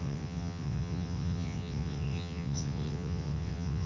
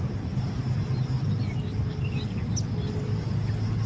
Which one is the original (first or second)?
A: second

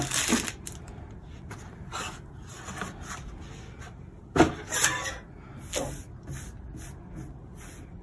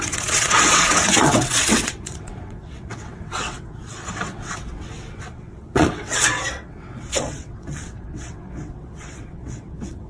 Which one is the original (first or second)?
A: first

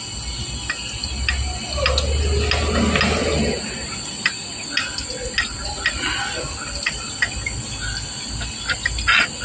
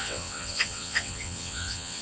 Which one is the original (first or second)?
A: first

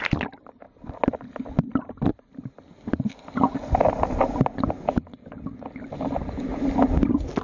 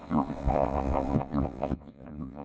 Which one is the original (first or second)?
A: first